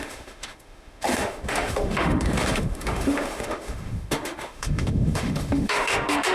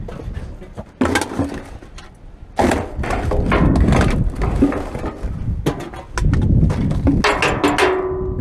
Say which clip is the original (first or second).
second